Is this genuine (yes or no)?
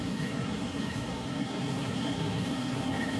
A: no